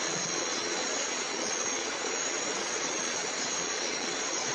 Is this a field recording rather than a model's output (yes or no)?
no